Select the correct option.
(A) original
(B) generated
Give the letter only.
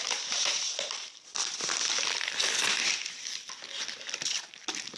B